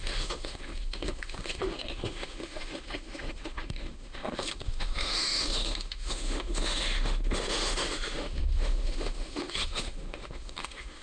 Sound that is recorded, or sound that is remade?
remade